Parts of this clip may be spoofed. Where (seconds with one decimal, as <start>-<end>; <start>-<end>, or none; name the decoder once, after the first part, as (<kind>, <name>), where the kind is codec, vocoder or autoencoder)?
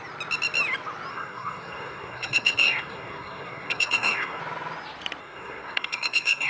1.1-4.4 (codec, SNAC); 5.2-6.5